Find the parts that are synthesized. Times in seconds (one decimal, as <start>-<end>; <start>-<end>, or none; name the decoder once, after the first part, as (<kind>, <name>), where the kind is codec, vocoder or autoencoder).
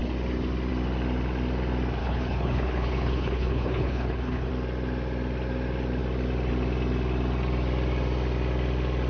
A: 2.0-4.5 (codec, HILCodec)